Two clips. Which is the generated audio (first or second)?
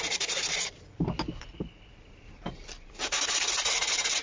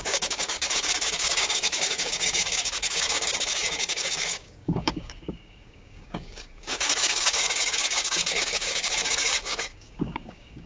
second